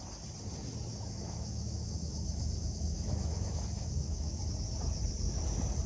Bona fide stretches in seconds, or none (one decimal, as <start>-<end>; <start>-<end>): 0.0-0.9; 4.4-5.9